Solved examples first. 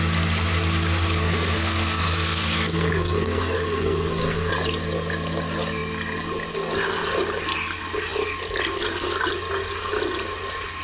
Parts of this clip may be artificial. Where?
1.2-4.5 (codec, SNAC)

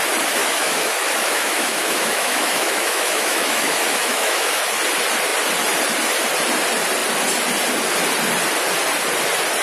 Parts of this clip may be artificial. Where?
0.4-4.6 (autoencoder, DAC-VAE)

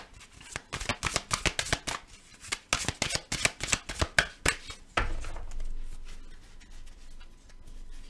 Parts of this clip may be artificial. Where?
none

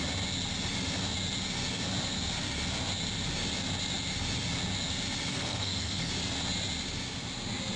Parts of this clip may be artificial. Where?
5.3-6.1 (codec, SNAC)

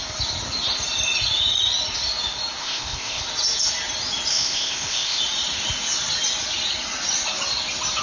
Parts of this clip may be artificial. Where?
2.6-3.2 (codec, ZipCodec); 4.3-5.2

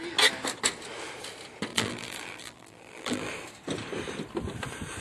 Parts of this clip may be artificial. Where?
1.7-3.3 (vocoder, BigVGAN v2)

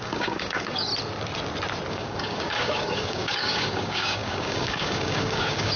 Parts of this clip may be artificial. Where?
0.0-0.9 (codec, DAC); 1.9-5.8

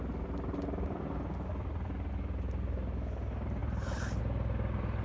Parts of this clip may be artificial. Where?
1.5-2.1 (vocoder, BigVGAN v2); 3.6-4.2